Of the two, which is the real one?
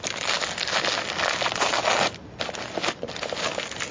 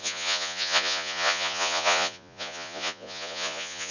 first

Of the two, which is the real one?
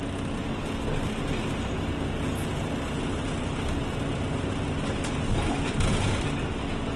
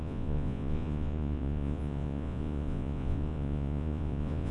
first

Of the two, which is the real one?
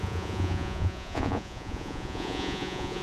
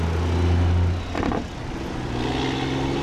second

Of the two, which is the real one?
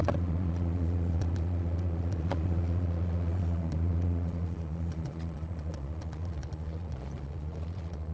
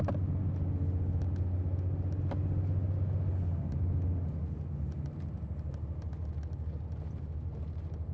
second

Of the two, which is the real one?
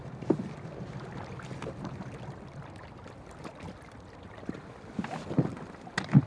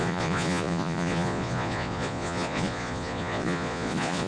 first